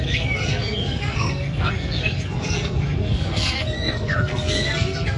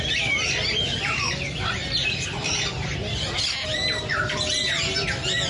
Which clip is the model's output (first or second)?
first